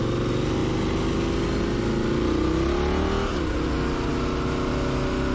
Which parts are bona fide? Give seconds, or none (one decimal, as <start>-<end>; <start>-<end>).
0.0-5.3